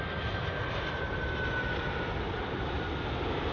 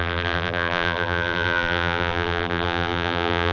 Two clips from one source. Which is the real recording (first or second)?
first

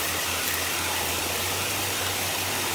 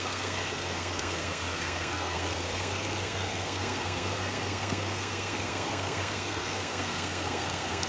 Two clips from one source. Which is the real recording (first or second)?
first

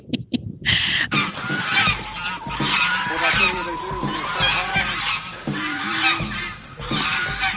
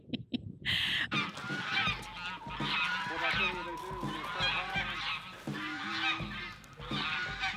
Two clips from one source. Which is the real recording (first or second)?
second